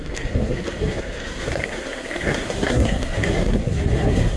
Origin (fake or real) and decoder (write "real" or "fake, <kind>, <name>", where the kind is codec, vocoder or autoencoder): fake, codec, SNAC